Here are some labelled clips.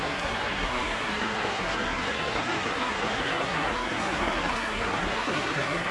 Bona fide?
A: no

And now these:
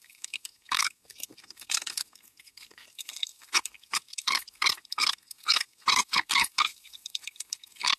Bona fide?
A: no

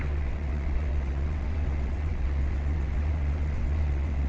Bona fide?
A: no